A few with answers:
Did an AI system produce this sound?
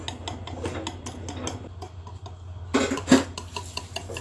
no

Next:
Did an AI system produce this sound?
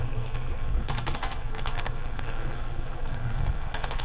yes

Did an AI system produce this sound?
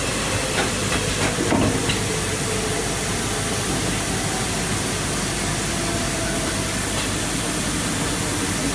no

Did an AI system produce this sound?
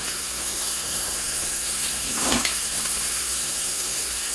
yes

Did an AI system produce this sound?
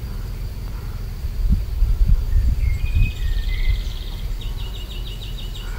yes